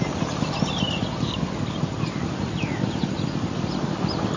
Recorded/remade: recorded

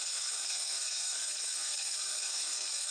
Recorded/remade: remade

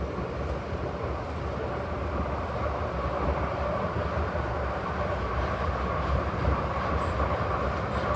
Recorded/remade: recorded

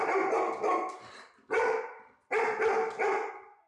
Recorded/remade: recorded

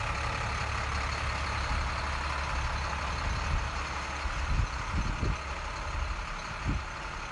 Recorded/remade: recorded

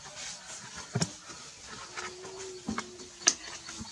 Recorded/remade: recorded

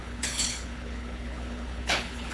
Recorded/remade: remade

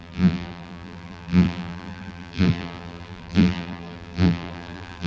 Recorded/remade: remade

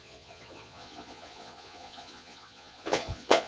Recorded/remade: remade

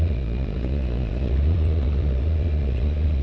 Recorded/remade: remade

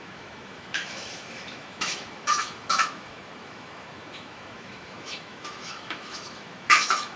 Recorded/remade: remade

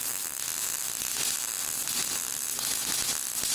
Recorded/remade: recorded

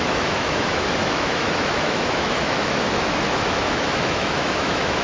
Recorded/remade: remade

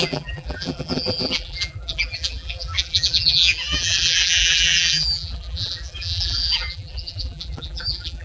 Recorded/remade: remade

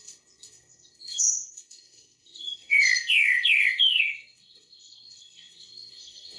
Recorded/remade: remade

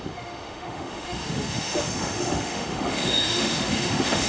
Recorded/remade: remade